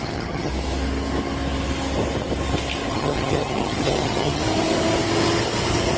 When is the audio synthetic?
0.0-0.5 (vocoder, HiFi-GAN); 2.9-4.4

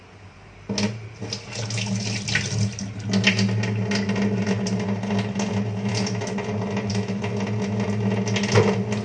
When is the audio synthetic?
none